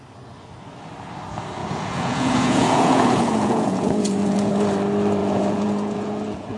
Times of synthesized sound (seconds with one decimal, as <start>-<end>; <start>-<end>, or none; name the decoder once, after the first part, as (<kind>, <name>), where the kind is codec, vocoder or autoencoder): 1.6-4.5 (vocoder, Vocos); 5.2-6.6